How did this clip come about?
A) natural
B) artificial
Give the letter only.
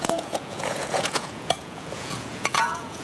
B